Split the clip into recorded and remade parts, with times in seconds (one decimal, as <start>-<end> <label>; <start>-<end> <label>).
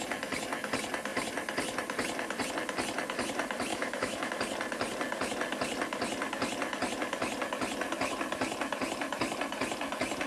0.0-3.7 recorded; 3.7-4.3 remade; 4.3-10.3 recorded